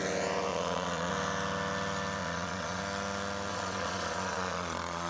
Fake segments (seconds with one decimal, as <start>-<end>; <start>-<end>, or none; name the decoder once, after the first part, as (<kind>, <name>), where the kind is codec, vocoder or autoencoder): 0.5-1.1 (vocoder, Vocos); 2.2-2.8; 3.5-5.1